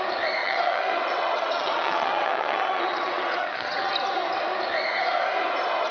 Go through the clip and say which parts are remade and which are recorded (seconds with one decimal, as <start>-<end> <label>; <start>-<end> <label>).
0.0-0.4 recorded; 0.4-3.9 remade; 3.9-5.9 recorded